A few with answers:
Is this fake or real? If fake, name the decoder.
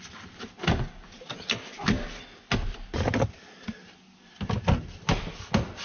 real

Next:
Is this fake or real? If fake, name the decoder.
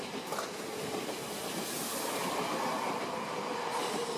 real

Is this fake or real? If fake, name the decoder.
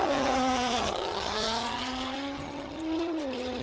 fake, vocoder, HiFi-GAN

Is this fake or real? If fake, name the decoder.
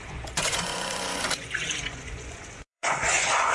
fake, vocoder, Vocos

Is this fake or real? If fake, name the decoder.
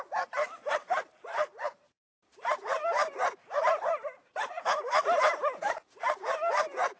fake, vocoder, BigVGAN v2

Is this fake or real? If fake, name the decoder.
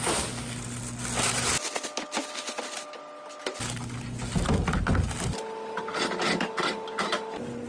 real